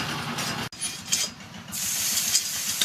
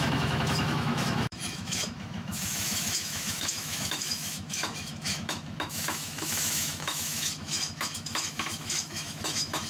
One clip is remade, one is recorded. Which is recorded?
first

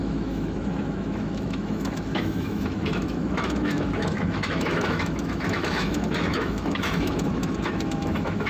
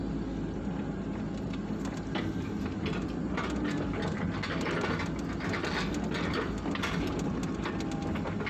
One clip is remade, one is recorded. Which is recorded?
second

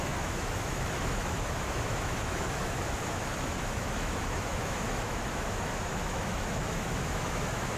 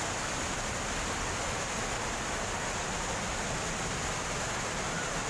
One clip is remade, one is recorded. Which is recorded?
second